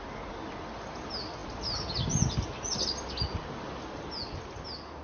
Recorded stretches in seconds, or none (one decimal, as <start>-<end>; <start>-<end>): 0.0-5.0